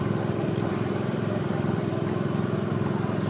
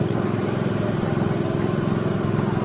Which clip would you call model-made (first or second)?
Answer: first